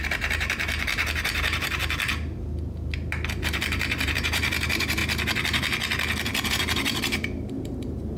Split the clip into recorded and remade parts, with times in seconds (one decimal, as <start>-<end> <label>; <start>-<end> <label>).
0.0-1.8 remade; 1.8-3.4 recorded; 3.4-5.0 remade; 5.0-6.5 recorded; 6.5-8.2 remade